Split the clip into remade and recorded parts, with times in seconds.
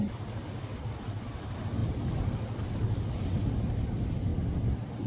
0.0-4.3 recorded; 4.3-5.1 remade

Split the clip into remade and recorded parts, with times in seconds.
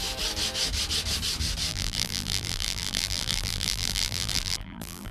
0.0-1.7 recorded; 1.7-5.1 remade